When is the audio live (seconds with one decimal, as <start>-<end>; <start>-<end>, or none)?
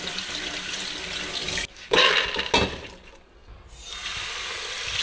0.0-1.4; 2.1-5.0